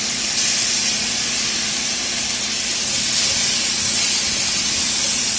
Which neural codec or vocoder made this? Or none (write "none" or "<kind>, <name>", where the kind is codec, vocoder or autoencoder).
none